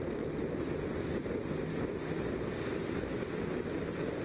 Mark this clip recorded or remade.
recorded